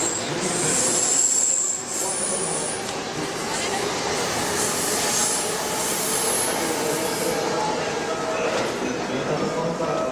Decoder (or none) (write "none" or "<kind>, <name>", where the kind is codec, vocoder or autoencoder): none